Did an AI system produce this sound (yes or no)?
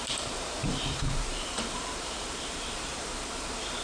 yes